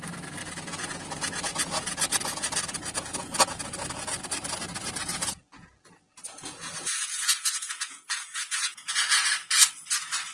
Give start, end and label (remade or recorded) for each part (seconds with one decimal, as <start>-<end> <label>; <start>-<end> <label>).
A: 0.0-0.4 recorded; 0.4-4.2 remade; 4.2-5.0 recorded; 5.0-9.5 remade; 9.5-10.3 recorded